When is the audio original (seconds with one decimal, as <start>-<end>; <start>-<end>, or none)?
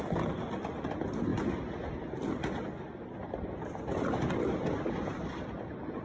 0.0-6.0